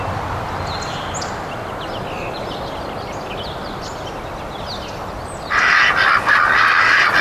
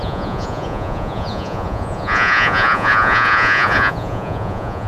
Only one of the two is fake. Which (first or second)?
second